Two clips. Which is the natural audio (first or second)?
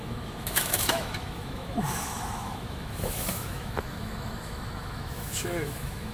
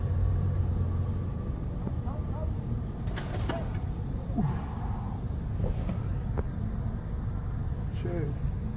second